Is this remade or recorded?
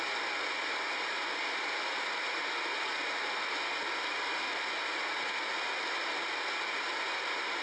recorded